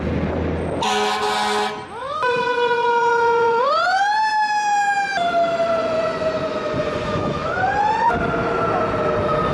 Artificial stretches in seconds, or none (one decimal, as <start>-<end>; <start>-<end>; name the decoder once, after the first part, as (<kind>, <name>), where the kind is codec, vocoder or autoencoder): 2.0-3.7 (vocoder, Vocos); 5.8-8.1